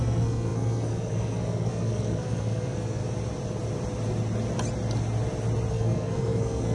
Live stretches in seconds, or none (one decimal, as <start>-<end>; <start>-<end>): 3.0-5.7